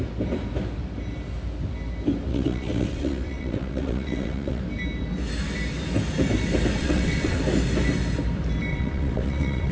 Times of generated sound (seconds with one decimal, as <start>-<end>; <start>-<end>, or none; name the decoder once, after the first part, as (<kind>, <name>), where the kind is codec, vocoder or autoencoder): 2.3-4.6 (vocoder, WaveNeXt); 6.8-7.4; 8.7-9.7